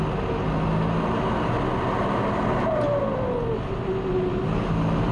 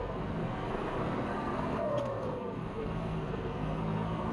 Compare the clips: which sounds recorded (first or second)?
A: first